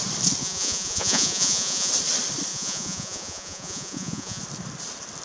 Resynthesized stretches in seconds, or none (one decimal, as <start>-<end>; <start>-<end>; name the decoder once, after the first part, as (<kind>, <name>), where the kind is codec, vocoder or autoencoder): 0.4-1.9 (vocoder, Vocos); 2.5-4.4